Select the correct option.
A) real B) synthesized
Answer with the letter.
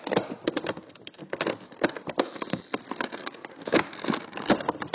A